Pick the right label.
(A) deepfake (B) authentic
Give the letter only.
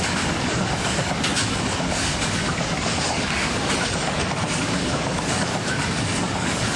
A